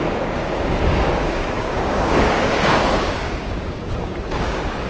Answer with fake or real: fake